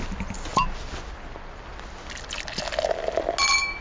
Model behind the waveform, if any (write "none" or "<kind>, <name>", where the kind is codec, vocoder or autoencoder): none